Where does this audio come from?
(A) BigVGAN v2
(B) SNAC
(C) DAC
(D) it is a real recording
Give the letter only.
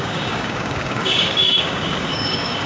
C